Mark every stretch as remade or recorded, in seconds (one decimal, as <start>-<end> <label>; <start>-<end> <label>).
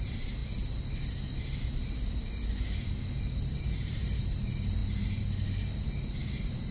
0.0-0.4 remade; 0.4-3.5 recorded; 3.5-4.8 remade; 4.8-5.8 recorded; 5.8-6.7 remade